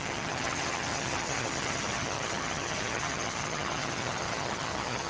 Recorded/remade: remade